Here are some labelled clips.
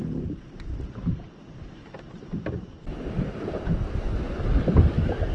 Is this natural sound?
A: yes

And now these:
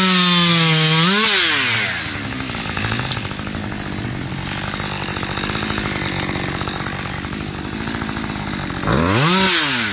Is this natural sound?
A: yes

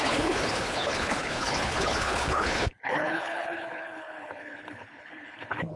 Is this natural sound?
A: no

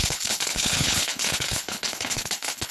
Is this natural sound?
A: no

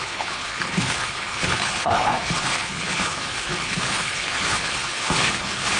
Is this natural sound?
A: no